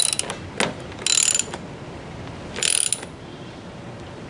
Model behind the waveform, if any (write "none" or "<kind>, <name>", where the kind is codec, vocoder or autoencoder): none